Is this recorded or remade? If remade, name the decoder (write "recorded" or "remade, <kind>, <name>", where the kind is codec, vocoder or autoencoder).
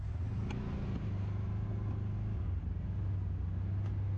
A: recorded